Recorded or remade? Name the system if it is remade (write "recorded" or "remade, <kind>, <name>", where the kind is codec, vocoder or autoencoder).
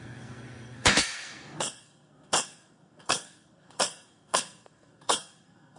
remade, codec, SNAC